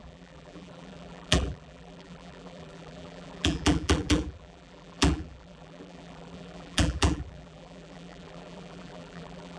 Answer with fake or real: fake